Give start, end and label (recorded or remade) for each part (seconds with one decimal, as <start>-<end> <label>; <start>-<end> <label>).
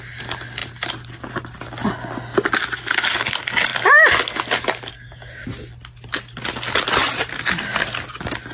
0.0-8.5 recorded